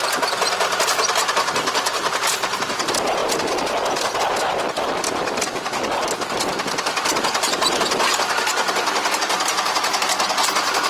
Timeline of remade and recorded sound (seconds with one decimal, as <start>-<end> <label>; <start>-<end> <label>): 0.0-10.9 recorded